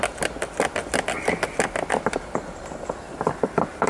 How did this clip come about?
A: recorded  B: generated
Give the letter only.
A